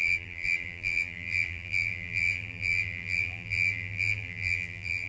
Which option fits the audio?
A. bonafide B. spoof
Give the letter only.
B